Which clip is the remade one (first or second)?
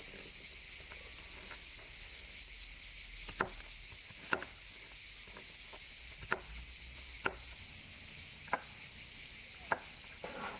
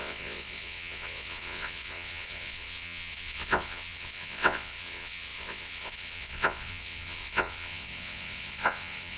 second